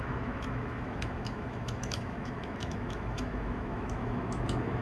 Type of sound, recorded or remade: remade